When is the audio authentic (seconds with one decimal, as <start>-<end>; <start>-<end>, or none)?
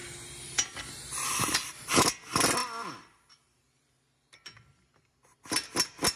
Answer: 0.0-6.2